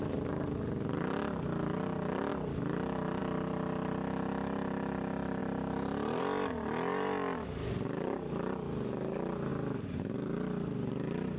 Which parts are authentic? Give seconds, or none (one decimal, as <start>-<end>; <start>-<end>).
0.0-5.4; 6.2-9.5